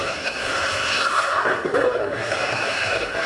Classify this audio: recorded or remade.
remade